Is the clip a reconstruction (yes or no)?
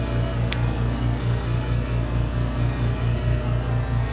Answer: yes